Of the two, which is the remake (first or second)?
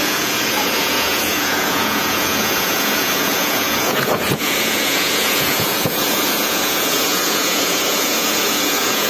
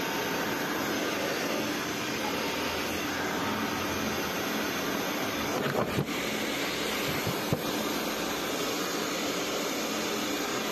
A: first